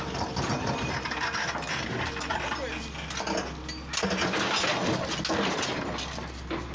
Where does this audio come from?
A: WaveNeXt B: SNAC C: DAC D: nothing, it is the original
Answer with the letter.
D